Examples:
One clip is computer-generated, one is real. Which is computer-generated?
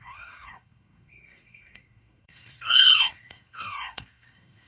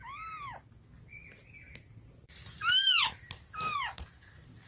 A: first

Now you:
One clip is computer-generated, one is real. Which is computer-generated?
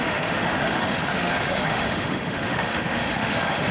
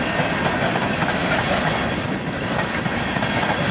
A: first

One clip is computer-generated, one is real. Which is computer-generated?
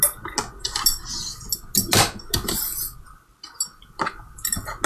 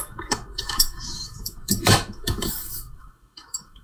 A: second